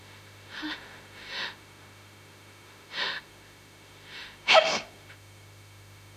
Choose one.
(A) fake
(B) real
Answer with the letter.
A